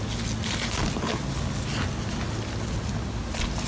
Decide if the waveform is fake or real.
real